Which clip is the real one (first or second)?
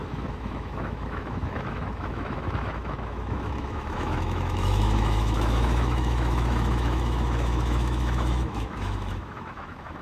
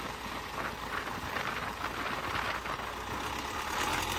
second